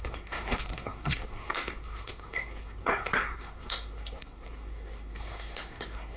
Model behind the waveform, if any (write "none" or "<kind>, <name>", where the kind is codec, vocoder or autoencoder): codec, SNAC